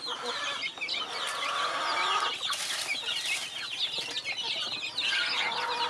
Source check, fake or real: real